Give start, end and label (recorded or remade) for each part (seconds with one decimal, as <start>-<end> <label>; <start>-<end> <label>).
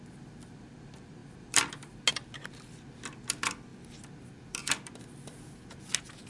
0.0-6.3 recorded